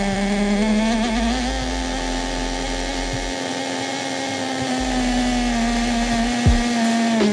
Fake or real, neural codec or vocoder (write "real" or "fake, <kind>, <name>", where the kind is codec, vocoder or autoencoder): real